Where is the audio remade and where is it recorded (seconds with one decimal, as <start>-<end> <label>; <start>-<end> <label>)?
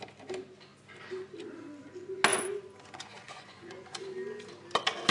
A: 0.0-2.3 recorded; 2.3-4.0 remade; 4.0-5.1 recorded